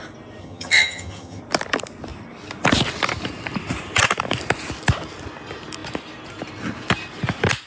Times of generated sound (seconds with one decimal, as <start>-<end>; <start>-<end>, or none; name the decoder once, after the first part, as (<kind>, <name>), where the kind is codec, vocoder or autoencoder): 0.4-1.4 (vocoder, HiFi-GAN)